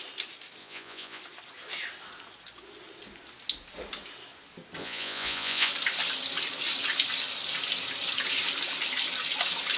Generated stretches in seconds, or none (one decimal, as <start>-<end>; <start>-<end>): 0.6-1.2; 4.8-5.7